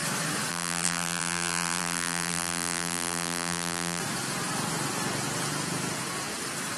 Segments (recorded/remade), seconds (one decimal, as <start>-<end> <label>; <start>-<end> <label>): 0.0-0.5 recorded; 0.5-4.0 remade; 4.0-6.8 recorded